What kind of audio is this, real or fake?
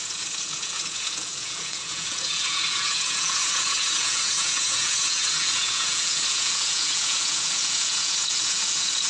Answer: fake